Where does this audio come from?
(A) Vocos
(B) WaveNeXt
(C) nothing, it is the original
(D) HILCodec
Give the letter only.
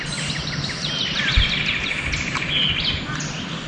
C